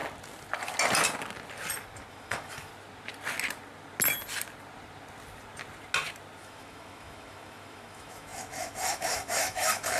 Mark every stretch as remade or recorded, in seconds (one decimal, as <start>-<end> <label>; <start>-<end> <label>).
0.0-2.1 recorded; 2.1-2.7 remade; 2.7-6.4 recorded; 6.4-10.0 remade